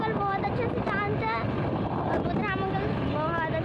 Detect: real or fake real